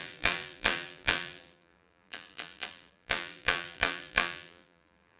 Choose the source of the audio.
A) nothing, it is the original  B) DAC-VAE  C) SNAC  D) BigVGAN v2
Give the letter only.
D